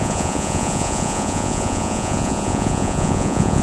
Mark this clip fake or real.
fake